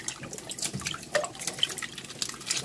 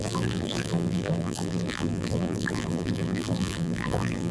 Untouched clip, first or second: first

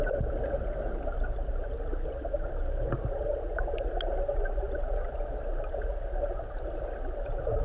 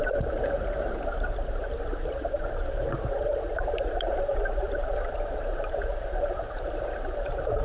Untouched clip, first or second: first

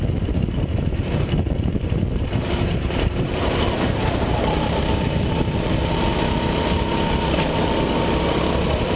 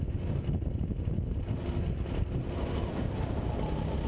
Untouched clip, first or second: second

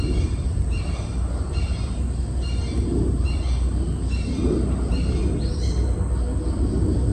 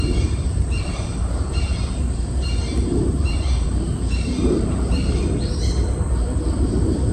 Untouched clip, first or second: first